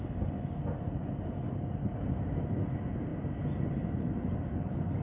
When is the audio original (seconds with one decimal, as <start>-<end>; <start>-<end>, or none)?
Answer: 0.0-5.0